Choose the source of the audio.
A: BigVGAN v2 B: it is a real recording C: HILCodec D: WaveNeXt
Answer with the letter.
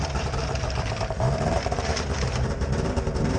A